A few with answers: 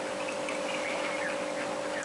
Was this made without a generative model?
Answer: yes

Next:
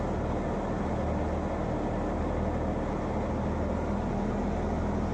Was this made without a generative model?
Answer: yes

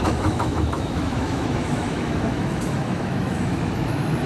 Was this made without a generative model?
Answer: no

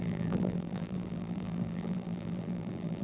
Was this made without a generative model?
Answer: no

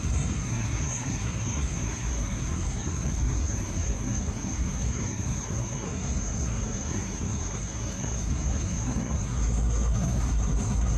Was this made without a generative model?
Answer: no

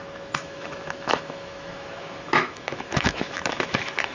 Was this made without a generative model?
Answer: no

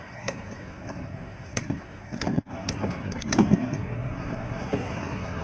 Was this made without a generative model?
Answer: no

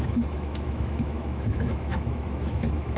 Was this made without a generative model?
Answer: no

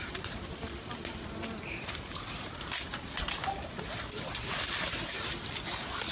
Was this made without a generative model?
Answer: yes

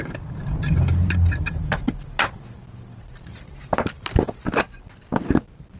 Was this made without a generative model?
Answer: yes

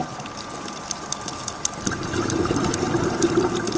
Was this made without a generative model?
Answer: no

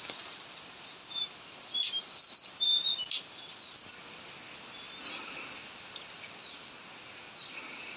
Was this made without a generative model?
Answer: yes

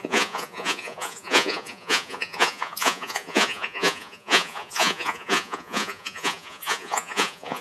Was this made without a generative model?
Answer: no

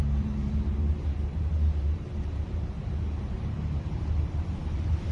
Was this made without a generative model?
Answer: no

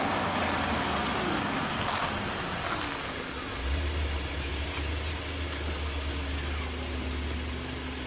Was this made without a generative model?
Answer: yes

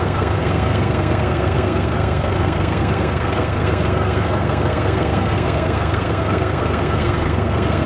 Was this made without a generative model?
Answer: no